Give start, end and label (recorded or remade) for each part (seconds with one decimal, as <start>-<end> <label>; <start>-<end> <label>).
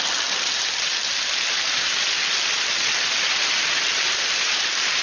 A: 0.0-5.0 recorded